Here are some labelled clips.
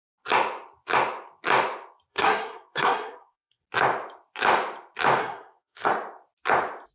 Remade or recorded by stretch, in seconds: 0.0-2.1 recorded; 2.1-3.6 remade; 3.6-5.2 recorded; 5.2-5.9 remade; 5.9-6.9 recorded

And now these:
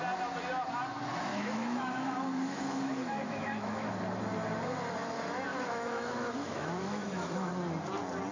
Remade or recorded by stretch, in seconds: 0.0-1.3 recorded; 1.3-3.9 remade; 3.9-5.5 recorded; 5.5-7.5 remade; 7.5-8.3 recorded

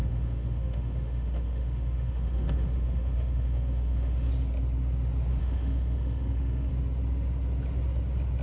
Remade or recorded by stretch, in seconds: 0.0-4.3 remade; 4.3-5.4 recorded; 5.4-6.7 remade; 6.7-8.4 recorded

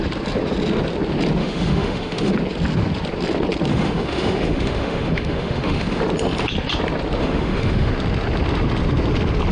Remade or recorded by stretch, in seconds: 0.0-1.4 recorded; 1.4-2.3 remade; 2.3-3.7 recorded; 3.7-6.0 remade; 6.0-7.2 recorded; 7.2-7.9 remade; 7.9-9.5 recorded

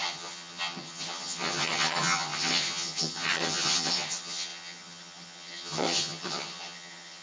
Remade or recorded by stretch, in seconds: 0.0-7.2 remade

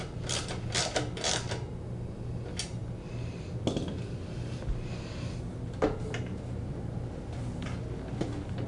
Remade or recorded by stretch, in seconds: 0.0-8.7 recorded

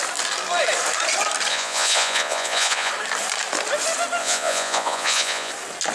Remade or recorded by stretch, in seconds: 0.0-1.5 recorded; 1.5-2.9 remade; 2.9-4.2 recorded; 4.2-5.5 remade; 5.5-5.9 recorded